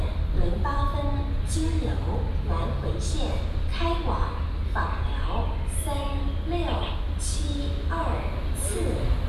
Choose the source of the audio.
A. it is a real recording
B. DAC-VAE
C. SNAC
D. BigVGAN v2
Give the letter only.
A